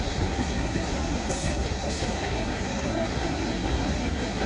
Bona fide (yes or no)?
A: no